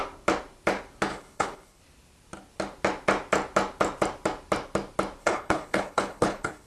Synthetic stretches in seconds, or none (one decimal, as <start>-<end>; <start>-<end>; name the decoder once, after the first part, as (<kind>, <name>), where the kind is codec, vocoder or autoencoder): 1.1-1.8 (codec, HILCodec); 5.2-6.7